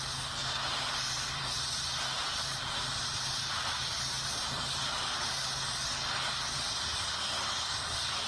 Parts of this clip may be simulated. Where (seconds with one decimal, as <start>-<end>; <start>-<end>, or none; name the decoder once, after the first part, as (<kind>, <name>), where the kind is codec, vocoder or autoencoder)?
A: 0.4-1.7 (vocoder, BigVGAN v2); 2.2-5.0